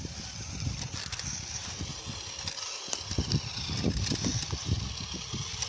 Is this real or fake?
real